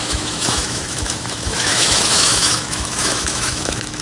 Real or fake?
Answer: fake